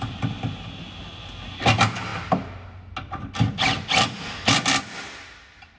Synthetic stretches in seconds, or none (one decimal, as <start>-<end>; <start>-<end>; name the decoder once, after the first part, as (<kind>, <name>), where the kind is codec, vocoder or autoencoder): none